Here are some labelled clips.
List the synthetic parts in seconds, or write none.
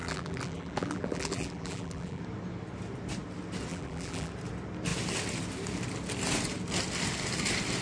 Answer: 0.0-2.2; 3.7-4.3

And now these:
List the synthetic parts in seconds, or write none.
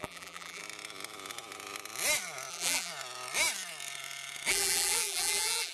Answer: 0.0-0.6; 2.5-2.9; 4.5-5.7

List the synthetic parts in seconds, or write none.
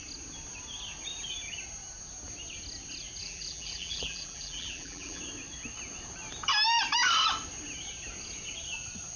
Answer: 3.2-5.2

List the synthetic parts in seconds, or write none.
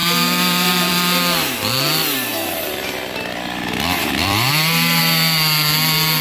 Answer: 0.0-0.9; 2.3-4.5